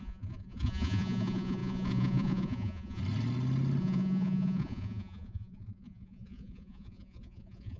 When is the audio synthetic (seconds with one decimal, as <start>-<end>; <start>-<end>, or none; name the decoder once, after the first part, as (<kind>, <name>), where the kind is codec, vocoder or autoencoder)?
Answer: 0.0-3.0 (vocoder, Vocos); 3.8-7.8